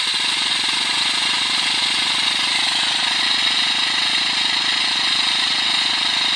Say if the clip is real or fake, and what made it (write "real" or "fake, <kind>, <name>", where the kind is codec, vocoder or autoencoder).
fake, vocoder, Vocos